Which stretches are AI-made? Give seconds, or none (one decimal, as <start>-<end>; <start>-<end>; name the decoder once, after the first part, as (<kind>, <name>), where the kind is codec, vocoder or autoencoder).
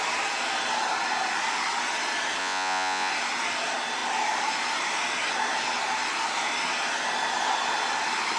2.4-3.1 (vocoder, Vocos)